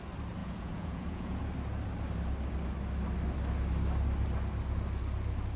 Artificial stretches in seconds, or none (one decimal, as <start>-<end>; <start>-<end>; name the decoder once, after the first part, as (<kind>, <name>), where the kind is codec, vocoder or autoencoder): 0.4-1.4 (vocoder, Vocos)